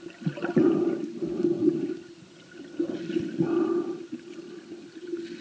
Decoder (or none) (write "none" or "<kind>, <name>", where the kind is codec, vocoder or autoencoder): none